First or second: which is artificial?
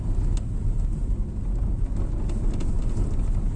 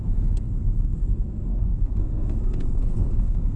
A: second